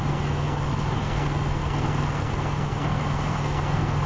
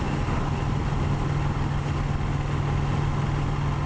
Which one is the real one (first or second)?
second